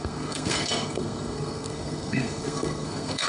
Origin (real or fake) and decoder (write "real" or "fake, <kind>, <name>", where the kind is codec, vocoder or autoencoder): fake, codec, SNAC